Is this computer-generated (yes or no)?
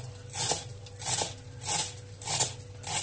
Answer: no